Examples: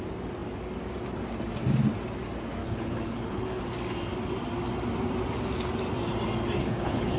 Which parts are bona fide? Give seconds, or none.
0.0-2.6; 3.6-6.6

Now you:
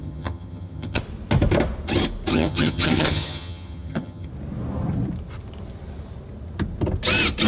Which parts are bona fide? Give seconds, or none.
1.0-2.3; 4.3-7.5

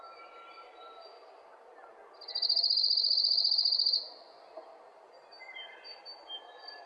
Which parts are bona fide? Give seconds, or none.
2.0-5.1

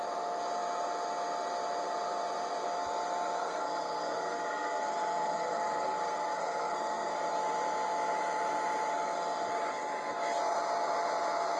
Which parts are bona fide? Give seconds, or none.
0.0-3.4; 7.1-11.6

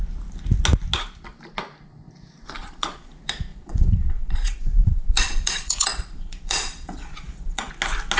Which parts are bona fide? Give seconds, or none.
0.0-2.6; 3.1-3.5; 7.7-8.2

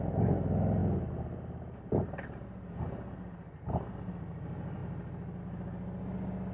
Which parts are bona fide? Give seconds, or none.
0.0-6.5